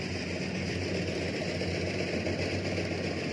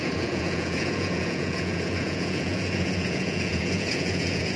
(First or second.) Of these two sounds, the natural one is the first